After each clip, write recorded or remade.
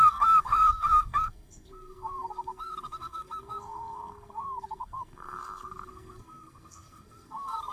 remade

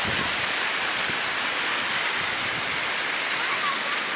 recorded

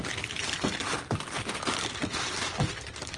remade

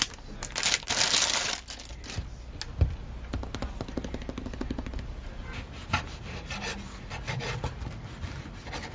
recorded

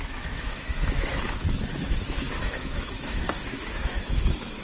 remade